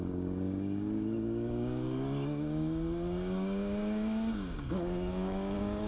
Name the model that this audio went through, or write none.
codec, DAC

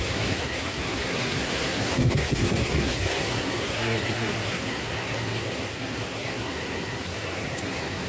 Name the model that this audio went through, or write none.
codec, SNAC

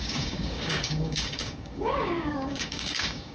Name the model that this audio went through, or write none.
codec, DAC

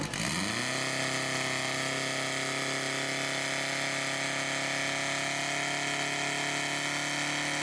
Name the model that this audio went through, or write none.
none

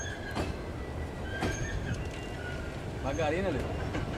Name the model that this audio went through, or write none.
none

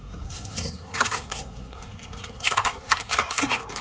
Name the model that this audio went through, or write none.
codec, SNAC